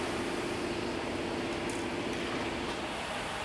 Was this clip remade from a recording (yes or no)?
no